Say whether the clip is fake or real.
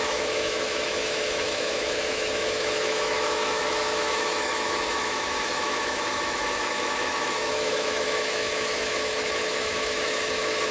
fake